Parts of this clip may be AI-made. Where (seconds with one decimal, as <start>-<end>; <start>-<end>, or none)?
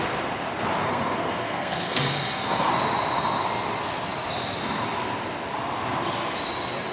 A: 0.8-2.7